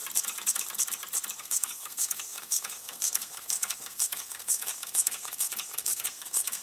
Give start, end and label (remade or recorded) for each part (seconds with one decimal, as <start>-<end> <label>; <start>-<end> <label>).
0.0-1.4 recorded; 1.4-6.6 remade